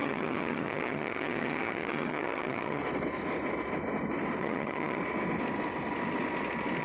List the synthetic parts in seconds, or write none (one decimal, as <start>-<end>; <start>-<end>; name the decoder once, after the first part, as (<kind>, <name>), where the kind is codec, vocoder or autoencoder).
0.0-2.8 (vocoder, HiFi-GAN); 4.4-5.0